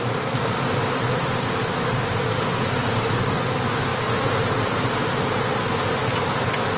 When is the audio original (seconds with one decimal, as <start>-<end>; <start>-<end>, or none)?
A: 0.0-2.8; 3.4-3.9; 4.5-6.8